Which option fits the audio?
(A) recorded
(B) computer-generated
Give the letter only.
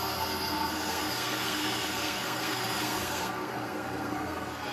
B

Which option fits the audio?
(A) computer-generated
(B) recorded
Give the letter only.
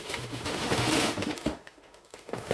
A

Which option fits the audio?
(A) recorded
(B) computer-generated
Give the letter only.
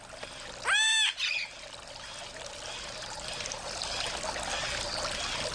A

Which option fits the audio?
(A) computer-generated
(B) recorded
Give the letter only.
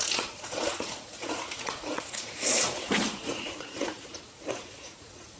A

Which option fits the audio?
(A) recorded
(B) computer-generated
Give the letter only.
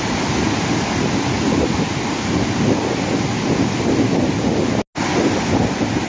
A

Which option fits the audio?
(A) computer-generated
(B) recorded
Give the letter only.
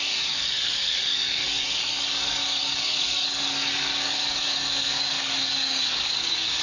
A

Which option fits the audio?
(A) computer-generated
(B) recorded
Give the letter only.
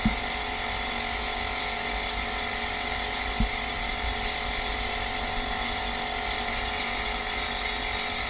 B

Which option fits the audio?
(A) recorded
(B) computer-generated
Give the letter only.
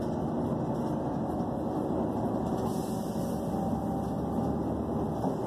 A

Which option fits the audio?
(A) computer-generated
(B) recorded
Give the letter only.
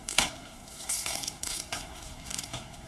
A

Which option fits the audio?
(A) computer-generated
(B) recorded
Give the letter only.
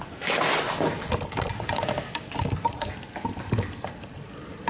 B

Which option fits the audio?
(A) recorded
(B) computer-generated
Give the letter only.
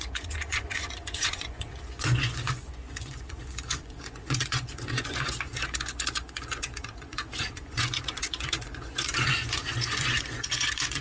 B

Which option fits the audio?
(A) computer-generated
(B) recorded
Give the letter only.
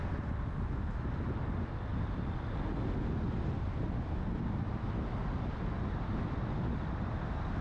B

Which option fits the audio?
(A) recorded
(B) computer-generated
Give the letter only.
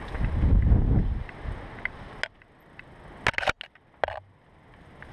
A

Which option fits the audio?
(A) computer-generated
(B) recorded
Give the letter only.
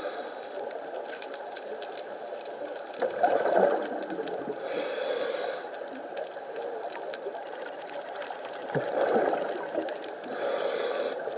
B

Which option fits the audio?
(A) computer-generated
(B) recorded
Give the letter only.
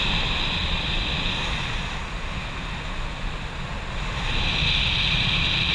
B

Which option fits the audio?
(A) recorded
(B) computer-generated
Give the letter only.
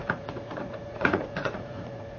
B